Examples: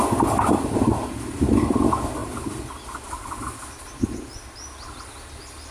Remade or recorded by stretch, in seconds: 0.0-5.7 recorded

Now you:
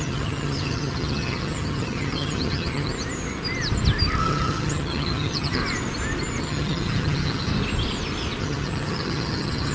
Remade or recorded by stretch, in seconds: 0.0-2.9 remade; 2.9-4.2 recorded; 4.2-5.6 remade; 5.6-6.4 recorded; 6.4-7.5 remade; 7.5-8.4 recorded; 8.4-9.7 remade

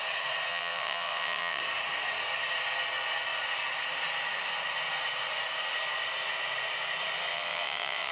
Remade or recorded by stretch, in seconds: 0.0-0.5 recorded; 0.5-1.6 remade; 1.6-7.3 recorded; 7.3-8.1 remade

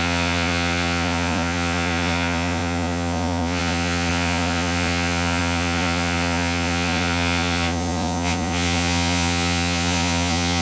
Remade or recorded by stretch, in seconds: 0.0-10.6 remade

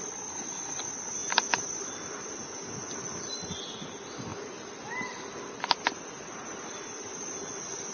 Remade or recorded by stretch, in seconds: 0.0-7.9 recorded

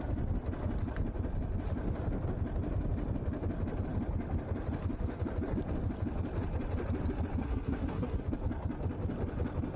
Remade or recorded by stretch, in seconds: 0.0-7.4 recorded; 7.4-8.2 remade; 8.2-9.8 recorded